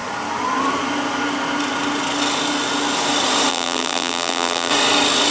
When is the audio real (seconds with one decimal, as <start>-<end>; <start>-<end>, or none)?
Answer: 0.0-3.5; 4.7-5.3

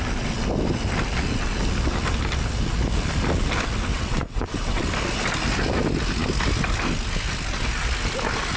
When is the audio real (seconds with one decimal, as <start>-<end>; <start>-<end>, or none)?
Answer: 0.0-3.9; 4.8-8.6